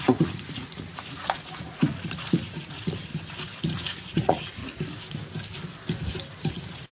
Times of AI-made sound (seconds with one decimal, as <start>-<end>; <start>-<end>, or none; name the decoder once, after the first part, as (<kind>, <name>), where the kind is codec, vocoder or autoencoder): 0.0-3.1 (vocoder, Vocos); 3.6-4.6; 6.5-7.0